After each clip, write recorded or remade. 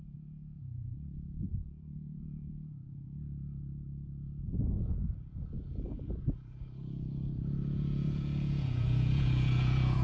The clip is remade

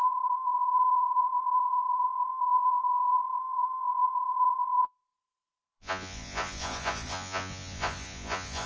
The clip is remade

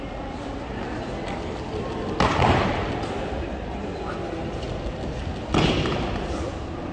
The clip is recorded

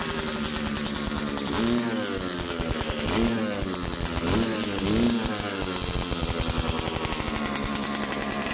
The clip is recorded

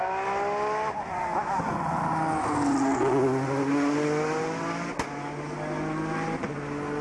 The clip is recorded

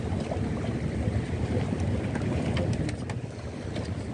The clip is recorded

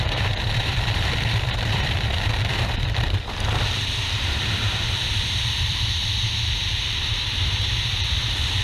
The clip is remade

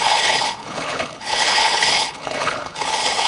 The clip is remade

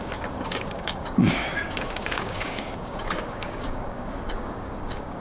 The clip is remade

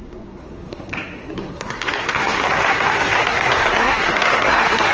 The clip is remade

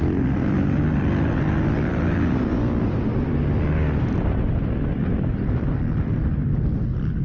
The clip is remade